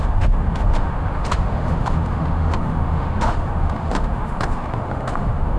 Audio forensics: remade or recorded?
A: remade